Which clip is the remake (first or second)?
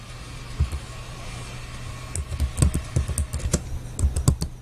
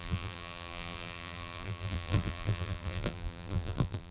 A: second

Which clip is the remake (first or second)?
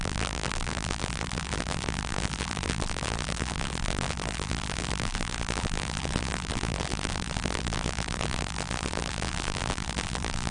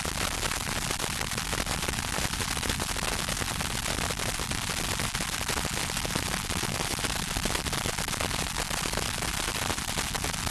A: first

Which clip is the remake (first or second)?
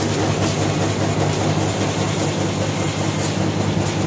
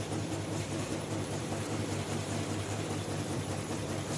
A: second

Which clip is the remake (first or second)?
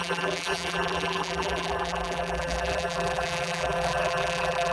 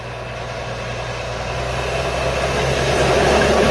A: first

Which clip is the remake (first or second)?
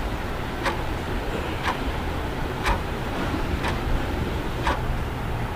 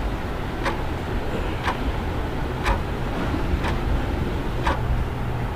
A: first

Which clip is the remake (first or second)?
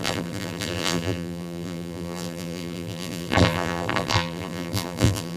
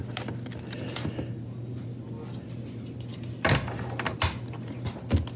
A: first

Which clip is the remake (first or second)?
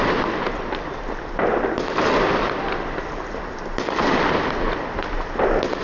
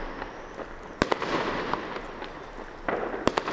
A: first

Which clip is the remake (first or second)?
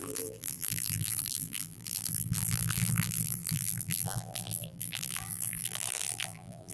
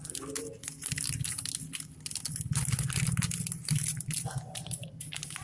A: first